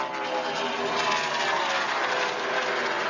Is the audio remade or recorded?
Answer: recorded